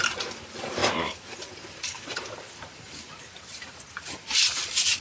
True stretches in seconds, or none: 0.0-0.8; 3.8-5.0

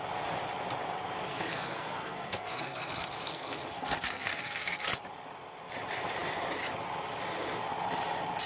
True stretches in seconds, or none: 0.0-1.3; 4.9-8.5

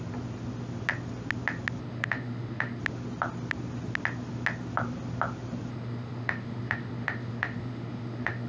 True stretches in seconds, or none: 0.0-1.8; 2.8-5.7

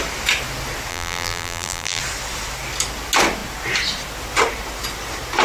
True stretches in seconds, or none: 0.0-0.9; 2.0-5.4

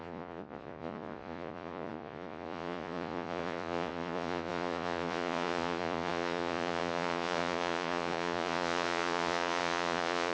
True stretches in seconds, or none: none

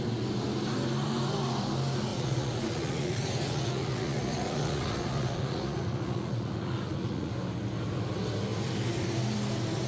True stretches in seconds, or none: 0.0-2.1; 7.3-9.9

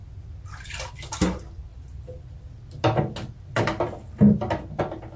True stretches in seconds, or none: 0.0-5.2

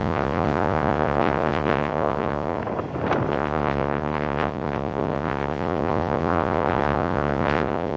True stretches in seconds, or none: 2.6-3.3